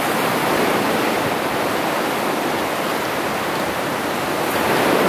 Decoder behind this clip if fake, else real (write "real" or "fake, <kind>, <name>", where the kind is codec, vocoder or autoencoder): real